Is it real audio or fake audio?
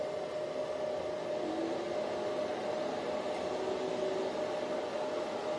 real